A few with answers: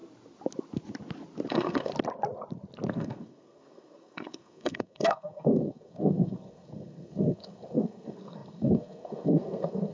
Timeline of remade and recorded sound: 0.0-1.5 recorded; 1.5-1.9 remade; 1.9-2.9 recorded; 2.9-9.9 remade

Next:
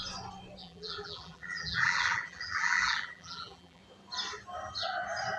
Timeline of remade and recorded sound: 0.0-0.6 recorded; 0.6-3.8 remade; 3.8-5.4 recorded

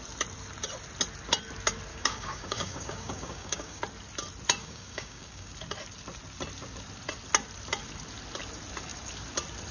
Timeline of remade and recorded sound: 0.0-1.9 recorded; 1.9-3.8 remade; 3.8-4.6 recorded; 4.6-5.5 remade; 5.5-9.7 recorded

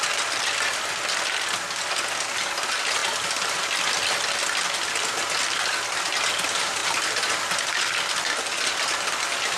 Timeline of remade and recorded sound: 0.0-9.6 recorded